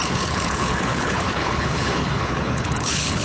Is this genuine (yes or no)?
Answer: no